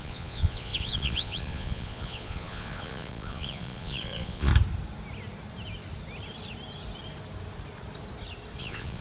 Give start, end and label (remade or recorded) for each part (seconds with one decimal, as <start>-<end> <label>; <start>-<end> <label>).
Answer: 0.0-4.5 remade; 4.5-8.6 recorded; 8.6-9.0 remade